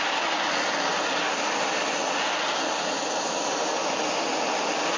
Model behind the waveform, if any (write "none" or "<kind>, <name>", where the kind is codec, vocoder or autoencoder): none